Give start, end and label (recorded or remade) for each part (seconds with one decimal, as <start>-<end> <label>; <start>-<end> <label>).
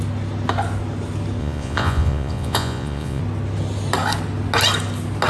0.0-1.4 recorded; 1.4-3.2 remade; 3.2-5.3 recorded